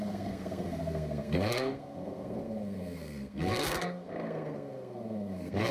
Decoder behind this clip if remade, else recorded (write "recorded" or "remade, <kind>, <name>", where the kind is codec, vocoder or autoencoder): remade, codec, SNAC